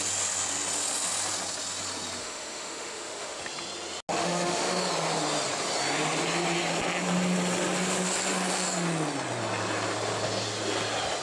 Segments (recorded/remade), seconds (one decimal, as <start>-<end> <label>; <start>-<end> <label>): 0.0-2.2 recorded; 2.2-3.4 remade; 3.4-4.1 recorded; 4.1-4.8 remade; 4.8-11.2 recorded